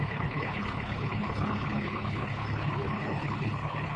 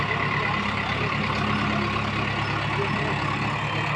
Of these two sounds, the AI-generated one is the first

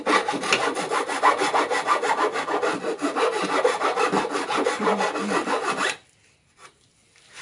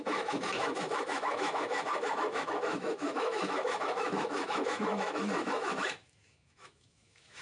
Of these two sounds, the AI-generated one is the second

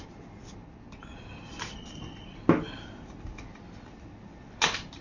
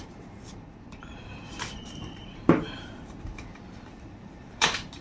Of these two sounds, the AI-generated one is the second